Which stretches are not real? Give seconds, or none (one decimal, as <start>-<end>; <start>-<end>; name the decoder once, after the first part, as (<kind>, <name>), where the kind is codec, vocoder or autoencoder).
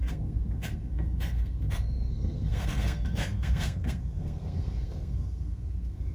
0.0-6.1 (codec, SNAC)